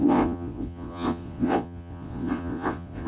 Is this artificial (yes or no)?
yes